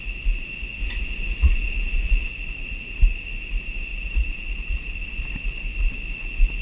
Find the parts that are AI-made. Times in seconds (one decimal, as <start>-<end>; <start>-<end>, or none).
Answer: 0.8-2.3; 3.9-5.2